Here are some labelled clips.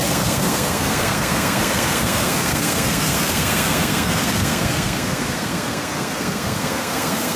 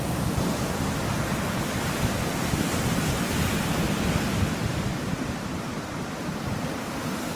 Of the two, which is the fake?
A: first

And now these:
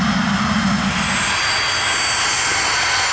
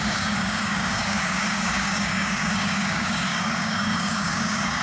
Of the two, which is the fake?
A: second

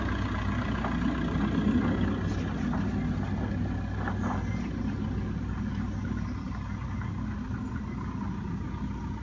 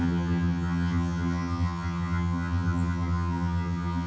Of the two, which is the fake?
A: second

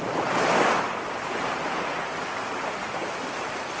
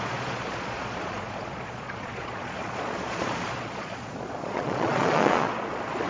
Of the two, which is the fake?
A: second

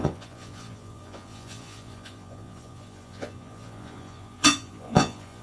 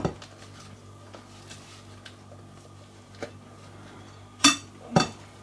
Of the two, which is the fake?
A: first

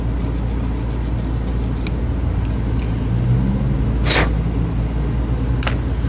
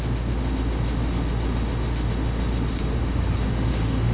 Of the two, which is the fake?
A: second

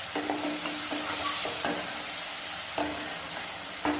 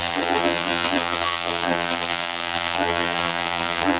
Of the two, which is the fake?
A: second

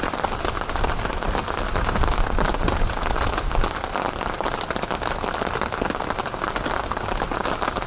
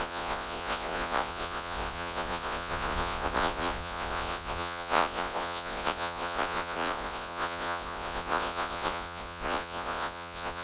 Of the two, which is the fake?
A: second